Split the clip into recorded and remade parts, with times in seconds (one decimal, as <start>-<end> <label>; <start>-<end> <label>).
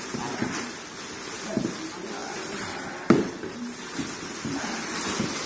0.0-2.2 recorded; 2.2-5.1 remade; 5.1-5.5 recorded